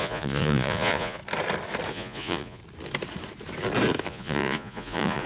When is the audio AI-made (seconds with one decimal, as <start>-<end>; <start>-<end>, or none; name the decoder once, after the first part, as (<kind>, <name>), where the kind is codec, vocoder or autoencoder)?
0.0-1.2 (vocoder, Vocos); 1.9-2.6; 4.0-5.3